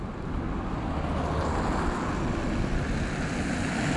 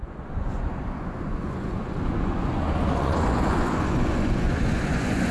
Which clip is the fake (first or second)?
second